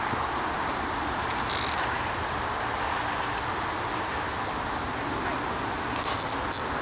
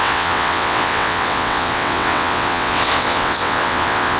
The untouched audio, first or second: first